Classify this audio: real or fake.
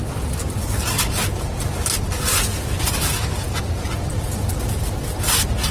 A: real